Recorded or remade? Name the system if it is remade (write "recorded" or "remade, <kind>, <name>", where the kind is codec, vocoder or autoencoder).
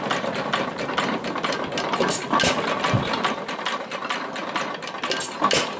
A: recorded